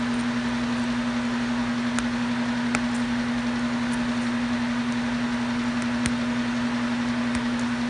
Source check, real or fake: real